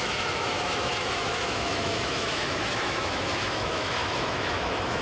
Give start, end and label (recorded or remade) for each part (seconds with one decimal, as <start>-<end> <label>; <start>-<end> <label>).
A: 0.0-5.0 remade